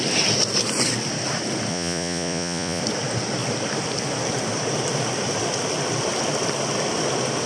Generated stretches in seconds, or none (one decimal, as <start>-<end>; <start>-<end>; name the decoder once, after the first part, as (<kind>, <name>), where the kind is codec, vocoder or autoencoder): 1.7-2.8 (vocoder, Vocos)